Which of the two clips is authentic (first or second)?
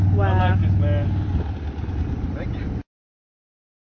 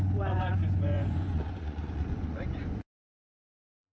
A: first